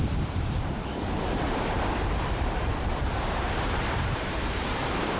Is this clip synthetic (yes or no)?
yes